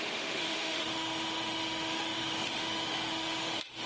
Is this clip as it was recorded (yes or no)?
no